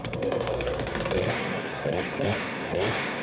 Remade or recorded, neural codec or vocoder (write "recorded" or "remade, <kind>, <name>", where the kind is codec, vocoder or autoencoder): remade, codec, SNAC